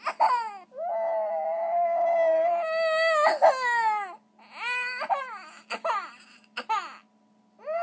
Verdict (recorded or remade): recorded